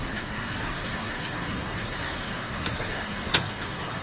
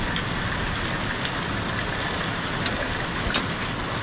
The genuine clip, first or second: second